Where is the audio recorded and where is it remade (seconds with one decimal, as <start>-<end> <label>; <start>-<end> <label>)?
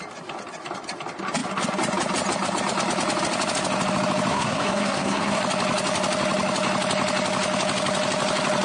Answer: 0.0-4.3 recorded; 4.3-5.4 remade; 5.4-8.6 recorded